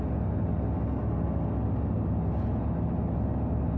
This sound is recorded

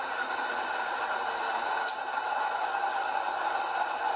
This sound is recorded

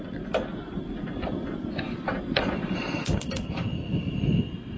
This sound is recorded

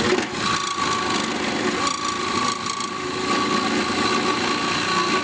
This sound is recorded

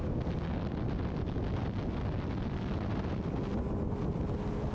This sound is recorded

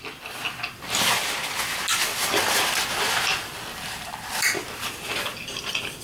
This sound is recorded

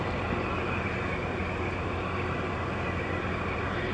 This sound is recorded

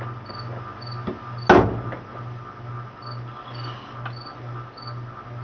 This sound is recorded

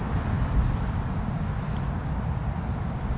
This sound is recorded